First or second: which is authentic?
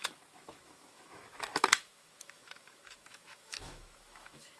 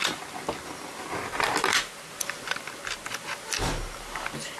second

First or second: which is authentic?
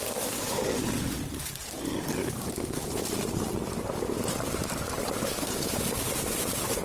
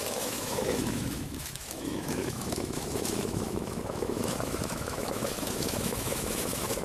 first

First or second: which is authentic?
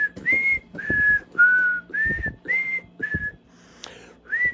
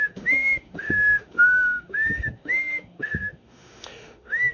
first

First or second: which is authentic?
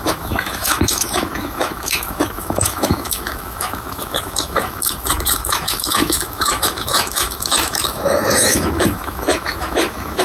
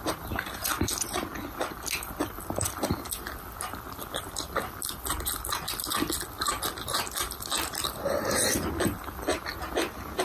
second